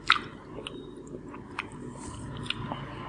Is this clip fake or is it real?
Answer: real